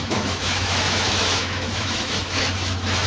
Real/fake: fake